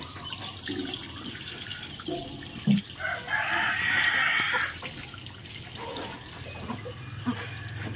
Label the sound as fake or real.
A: real